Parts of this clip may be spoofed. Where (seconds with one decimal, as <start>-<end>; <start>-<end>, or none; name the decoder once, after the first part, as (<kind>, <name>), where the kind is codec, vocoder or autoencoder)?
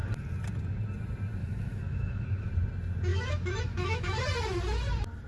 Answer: 1.4-2.5 (autoencoder, DAC-VAE); 3.1-4.2